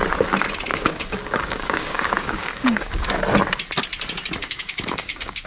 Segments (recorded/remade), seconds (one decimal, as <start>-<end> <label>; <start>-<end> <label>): 0.0-0.7 recorded; 0.7-3.1 remade; 3.1-4.4 recorded; 4.4-5.5 remade